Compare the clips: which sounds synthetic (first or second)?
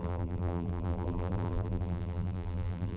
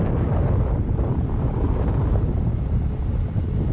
first